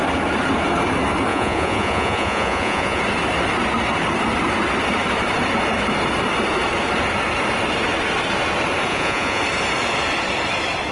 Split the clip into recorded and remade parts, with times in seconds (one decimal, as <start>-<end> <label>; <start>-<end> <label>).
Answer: 0.0-1.3 recorded; 1.3-3.0 remade; 3.0-8.9 recorded; 8.9-9.4 remade; 9.4-10.9 recorded